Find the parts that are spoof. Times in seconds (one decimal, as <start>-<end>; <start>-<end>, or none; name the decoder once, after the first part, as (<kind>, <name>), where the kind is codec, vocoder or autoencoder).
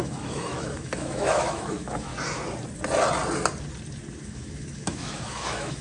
0.0-2.1 (autoencoder, DAC-VAE); 4.2-5.8